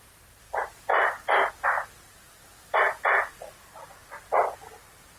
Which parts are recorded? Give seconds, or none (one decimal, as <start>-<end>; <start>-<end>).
0.0-5.2